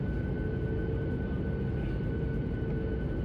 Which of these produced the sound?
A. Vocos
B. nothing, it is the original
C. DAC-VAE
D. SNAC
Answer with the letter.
B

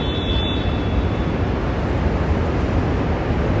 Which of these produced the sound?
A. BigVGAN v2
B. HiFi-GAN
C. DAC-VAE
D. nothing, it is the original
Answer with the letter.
D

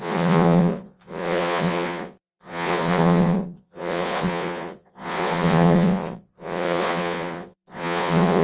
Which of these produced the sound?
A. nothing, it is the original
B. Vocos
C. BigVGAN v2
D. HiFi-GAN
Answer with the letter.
B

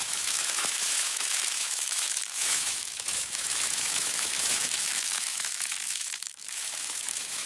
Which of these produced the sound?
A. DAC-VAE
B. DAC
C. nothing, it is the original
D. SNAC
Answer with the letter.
A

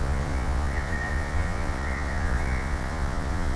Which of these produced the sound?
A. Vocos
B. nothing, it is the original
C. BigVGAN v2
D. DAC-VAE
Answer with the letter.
A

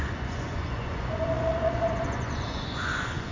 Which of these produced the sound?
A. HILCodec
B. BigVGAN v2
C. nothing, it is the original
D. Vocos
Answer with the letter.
D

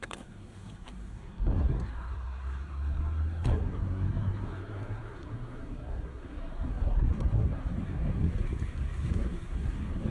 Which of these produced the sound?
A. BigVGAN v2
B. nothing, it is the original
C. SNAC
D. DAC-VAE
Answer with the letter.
C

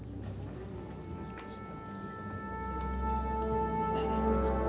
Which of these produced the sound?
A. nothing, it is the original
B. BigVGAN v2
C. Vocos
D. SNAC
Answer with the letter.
A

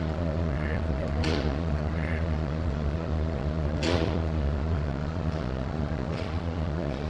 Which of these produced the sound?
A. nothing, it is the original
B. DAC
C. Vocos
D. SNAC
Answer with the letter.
C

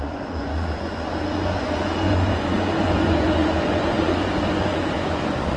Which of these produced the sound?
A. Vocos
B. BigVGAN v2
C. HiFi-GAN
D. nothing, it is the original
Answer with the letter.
A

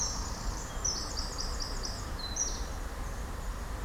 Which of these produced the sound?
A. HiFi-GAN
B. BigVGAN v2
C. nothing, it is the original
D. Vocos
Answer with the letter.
B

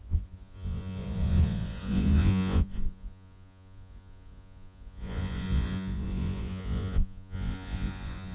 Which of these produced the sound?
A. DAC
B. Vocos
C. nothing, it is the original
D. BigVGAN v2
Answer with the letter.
B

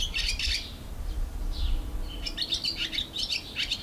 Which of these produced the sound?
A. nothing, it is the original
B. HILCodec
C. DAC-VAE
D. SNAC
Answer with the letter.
A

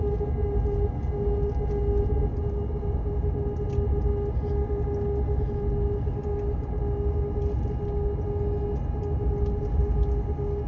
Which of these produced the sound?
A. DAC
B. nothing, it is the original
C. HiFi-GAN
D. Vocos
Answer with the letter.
B